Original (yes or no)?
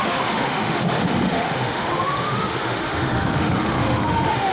no